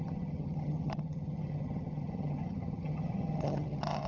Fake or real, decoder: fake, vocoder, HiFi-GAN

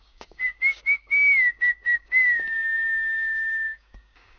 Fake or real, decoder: fake, codec, DAC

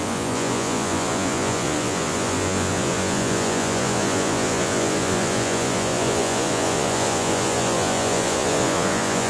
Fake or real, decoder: fake, vocoder, Vocos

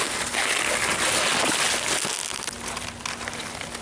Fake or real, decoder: real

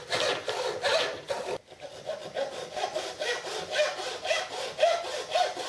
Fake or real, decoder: real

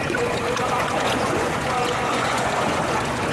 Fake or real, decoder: fake, vocoder, Vocos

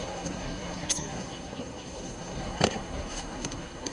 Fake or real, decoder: fake, codec, SNAC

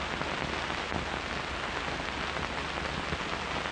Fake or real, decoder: real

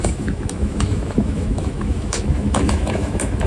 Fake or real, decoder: fake, autoencoder, DAC-VAE